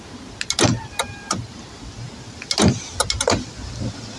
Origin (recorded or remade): recorded